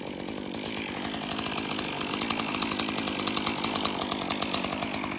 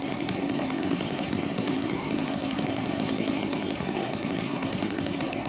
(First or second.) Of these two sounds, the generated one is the second